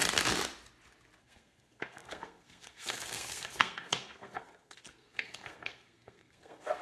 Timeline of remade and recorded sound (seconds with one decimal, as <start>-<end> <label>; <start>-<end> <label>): 0.0-1.2 recorded; 1.2-6.8 remade